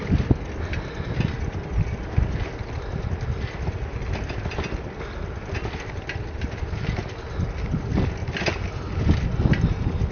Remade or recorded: recorded